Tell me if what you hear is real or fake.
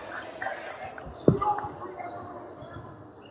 real